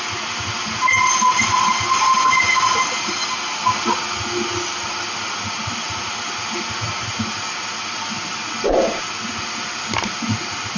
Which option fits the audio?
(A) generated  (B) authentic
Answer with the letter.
B